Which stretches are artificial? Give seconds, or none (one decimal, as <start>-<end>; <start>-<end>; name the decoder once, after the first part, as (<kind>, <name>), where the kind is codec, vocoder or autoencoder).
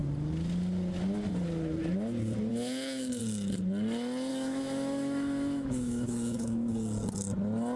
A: 2.5-3.2 (autoencoder, DAC-VAE); 4.3-6.7